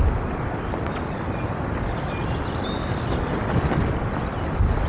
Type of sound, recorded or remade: recorded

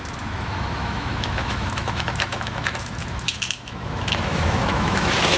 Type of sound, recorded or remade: remade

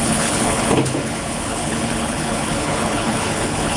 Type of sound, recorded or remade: remade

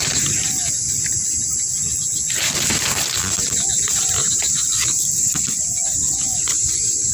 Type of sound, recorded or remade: recorded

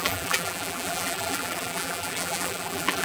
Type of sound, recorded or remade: remade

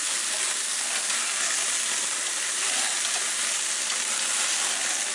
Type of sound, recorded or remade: recorded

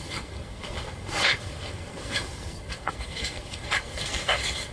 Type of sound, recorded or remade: remade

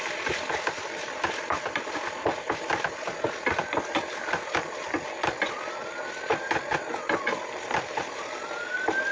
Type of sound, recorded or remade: recorded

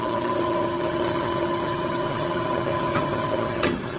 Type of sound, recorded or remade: remade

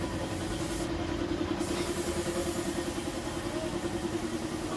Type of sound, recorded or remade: recorded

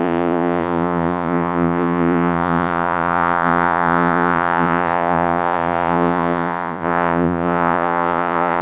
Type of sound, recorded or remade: remade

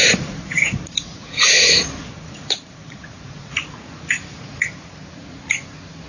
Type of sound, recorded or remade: remade